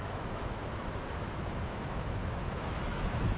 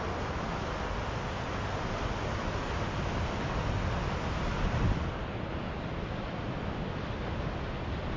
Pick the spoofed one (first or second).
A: first